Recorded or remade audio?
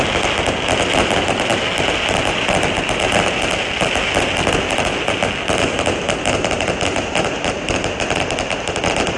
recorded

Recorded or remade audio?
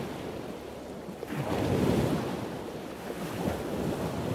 recorded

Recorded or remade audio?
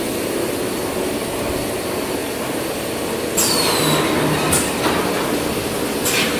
recorded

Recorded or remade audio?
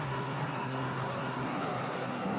remade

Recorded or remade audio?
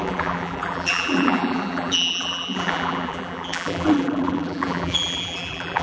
remade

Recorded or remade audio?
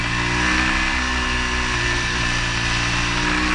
recorded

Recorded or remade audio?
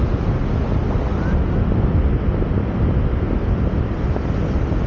recorded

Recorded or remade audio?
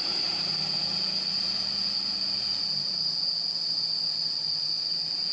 recorded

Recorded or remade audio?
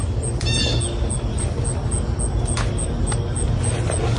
recorded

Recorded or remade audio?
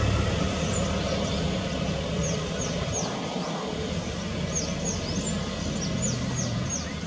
recorded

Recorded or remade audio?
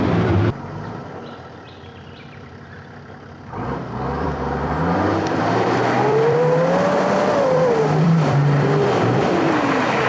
remade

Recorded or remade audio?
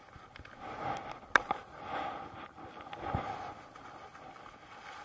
recorded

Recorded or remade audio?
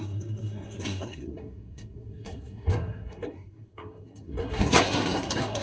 remade